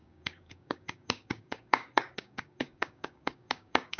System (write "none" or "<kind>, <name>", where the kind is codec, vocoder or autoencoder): codec, DAC